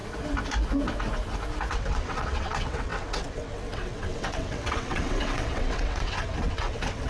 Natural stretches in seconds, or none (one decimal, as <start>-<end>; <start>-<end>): 0.0-1.7